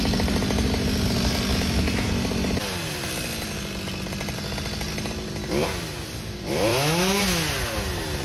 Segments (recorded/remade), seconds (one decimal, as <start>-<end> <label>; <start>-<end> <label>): 0.0-1.5 recorded; 1.5-2.1 remade; 2.1-6.7 recorded; 6.7-7.2 remade; 7.2-8.2 recorded